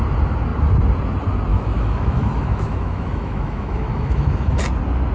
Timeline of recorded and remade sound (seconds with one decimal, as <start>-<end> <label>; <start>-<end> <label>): 0.0-1.5 recorded; 1.5-4.6 remade; 4.6-5.1 recorded

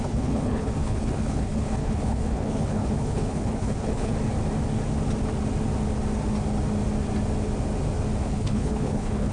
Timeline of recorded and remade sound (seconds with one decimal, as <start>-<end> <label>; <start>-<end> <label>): 0.0-4.1 remade; 4.1-8.2 recorded; 8.2-9.3 remade

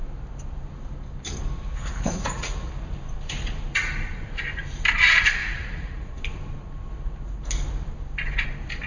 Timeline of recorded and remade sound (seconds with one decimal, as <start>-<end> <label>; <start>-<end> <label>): 0.0-1.7 recorded; 1.7-2.7 remade; 2.7-5.4 recorded; 5.4-6.2 remade; 6.2-8.9 recorded

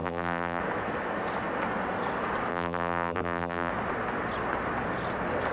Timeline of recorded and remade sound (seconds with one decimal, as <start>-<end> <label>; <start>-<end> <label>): 0.0-0.6 remade; 0.6-2.5 recorded; 2.5-3.7 remade; 3.7-5.5 recorded

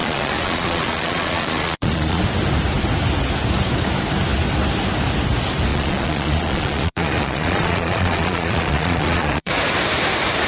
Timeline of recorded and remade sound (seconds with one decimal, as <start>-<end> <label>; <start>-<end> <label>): 0.0-2.2 remade; 2.2-5.7 recorded; 5.7-9.5 remade; 9.5-10.5 recorded